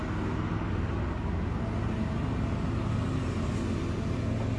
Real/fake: real